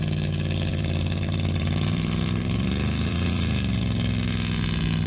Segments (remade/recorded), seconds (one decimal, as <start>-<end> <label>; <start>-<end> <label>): 0.0-0.7 recorded; 0.7-3.8 remade; 3.8-5.1 recorded